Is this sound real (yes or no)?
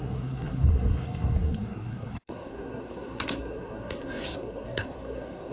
no